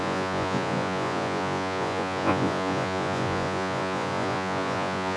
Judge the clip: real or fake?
fake